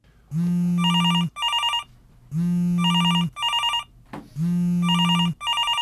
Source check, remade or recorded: recorded